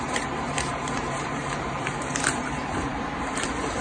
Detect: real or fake fake